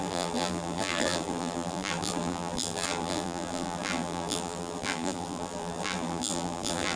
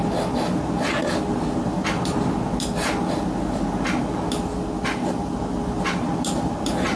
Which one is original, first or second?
second